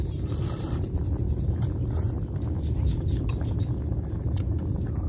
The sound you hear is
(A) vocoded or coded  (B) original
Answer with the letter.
B